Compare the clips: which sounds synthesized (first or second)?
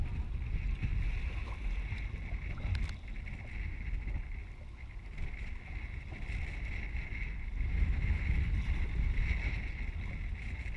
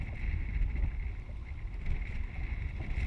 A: second